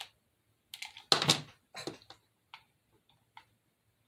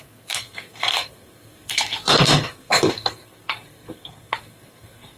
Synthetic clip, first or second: second